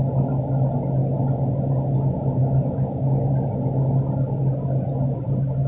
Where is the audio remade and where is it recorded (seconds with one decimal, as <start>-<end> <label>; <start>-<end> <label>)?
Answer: 0.0-2.4 recorded; 2.4-3.3 remade; 3.3-5.7 recorded